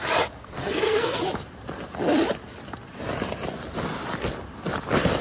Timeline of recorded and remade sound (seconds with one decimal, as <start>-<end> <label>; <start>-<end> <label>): 0.0-0.4 recorded; 0.4-1.2 remade; 1.2-5.2 recorded